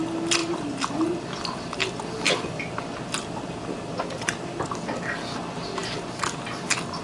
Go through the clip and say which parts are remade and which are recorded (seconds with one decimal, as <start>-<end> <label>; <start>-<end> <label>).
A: 0.0-0.4 recorded; 0.4-4.6 remade; 4.6-7.0 recorded